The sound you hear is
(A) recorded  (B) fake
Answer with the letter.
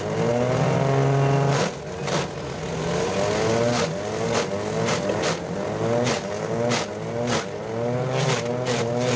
A